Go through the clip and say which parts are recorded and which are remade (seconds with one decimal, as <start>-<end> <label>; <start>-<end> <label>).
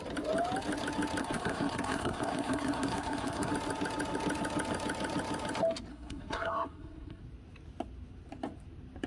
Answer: 0.0-1.2 recorded; 1.2-3.5 remade; 3.5-5.9 recorded; 5.9-7.2 remade; 7.2-9.1 recorded